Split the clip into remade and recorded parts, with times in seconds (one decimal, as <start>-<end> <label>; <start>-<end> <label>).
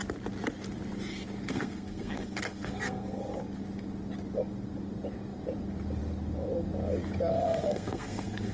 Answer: 0.0-1.5 recorded; 1.5-3.2 remade; 3.2-7.3 recorded; 7.3-8.5 remade